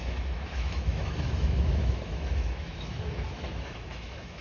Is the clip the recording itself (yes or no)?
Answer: no